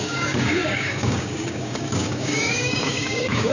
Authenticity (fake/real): fake